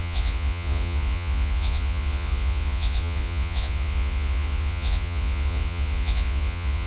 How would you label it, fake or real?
fake